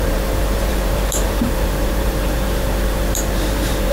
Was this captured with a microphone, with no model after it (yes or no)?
no